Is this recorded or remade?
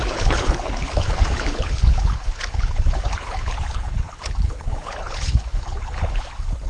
remade